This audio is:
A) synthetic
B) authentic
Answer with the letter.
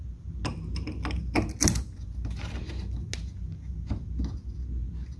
B